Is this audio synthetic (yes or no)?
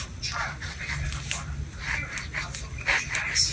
no